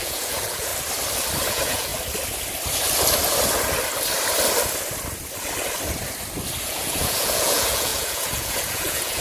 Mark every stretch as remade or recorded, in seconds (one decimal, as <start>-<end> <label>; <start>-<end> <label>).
0.0-0.7 remade; 0.7-1.5 recorded; 1.5-1.9 remade; 1.9-6.6 recorded; 6.6-9.2 remade